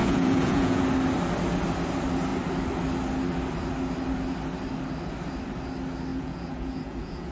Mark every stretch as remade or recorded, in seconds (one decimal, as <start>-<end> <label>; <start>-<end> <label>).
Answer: 0.0-0.8 remade; 0.8-6.1 recorded; 6.1-7.3 remade